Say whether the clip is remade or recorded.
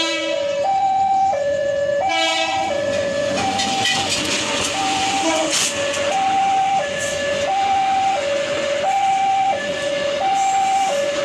remade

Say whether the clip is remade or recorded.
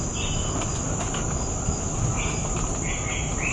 recorded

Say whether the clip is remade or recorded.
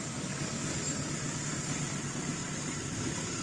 remade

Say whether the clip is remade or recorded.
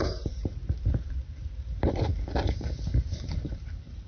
remade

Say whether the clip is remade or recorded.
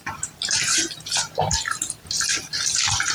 remade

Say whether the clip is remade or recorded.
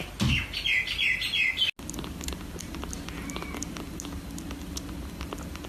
recorded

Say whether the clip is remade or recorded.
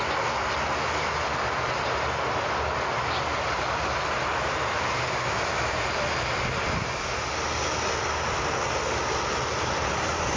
recorded